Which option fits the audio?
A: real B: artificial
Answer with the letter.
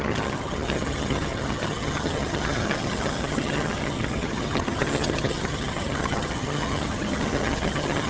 B